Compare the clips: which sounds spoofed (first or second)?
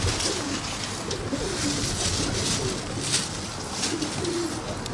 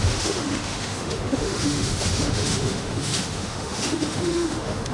second